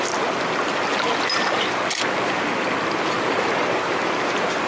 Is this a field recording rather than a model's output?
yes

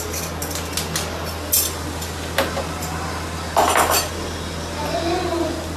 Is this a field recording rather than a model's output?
yes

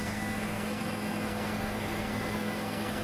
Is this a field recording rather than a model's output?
no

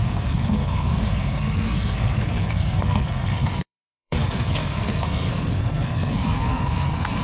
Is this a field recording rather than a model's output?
no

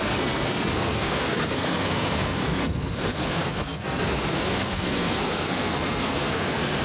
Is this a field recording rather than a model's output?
no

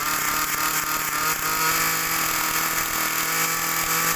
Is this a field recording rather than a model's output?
yes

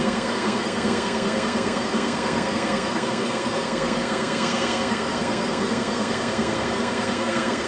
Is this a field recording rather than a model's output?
no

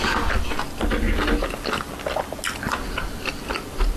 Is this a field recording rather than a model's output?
yes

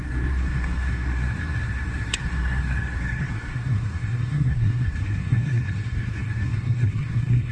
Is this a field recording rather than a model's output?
no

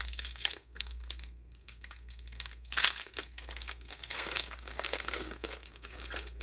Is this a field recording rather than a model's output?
no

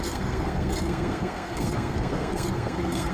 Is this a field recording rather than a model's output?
no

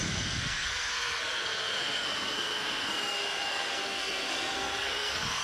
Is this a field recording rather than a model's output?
no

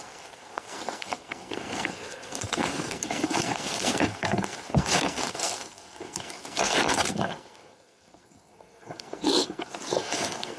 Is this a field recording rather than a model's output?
no